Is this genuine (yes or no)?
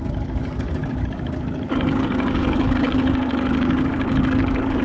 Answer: no